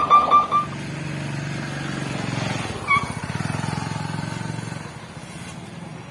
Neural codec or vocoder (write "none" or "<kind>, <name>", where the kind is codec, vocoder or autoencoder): none